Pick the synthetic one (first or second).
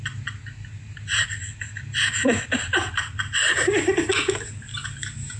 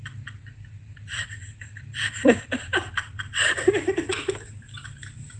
second